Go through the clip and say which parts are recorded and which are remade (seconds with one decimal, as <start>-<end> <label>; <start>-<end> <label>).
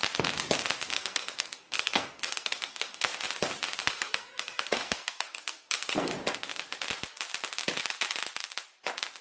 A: 0.0-0.9 recorded; 0.9-3.1 remade; 3.1-3.8 recorded; 3.8-6.1 remade; 6.1-9.2 recorded